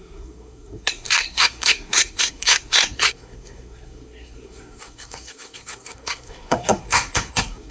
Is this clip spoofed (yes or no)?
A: yes